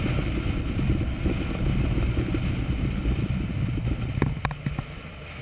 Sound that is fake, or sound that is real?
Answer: real